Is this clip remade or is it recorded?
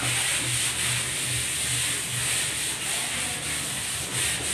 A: recorded